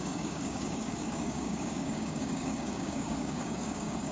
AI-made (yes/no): yes